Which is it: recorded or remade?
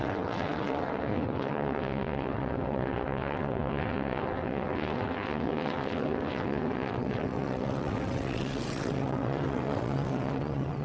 remade